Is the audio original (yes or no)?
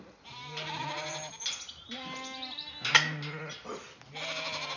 yes